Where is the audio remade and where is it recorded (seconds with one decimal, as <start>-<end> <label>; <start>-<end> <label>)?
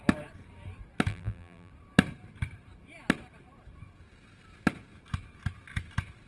0.0-1.1 recorded; 1.1-1.7 remade; 1.7-6.3 recorded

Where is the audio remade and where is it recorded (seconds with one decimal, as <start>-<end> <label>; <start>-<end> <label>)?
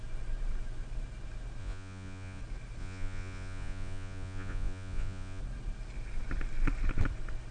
0.0-1.6 recorded; 1.6-2.4 remade; 2.4-2.8 recorded; 2.8-5.4 remade; 5.4-7.5 recorded